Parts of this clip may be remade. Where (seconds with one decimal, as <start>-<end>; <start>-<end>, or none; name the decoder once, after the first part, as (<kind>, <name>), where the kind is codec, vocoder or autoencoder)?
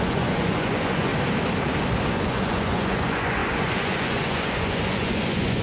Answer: 0.0-1.1 (vocoder, Vocos); 2.1-5.6